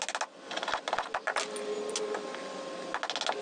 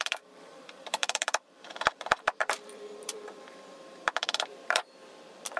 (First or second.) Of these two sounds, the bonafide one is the first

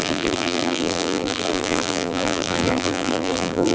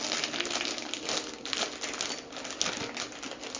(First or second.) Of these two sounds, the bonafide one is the second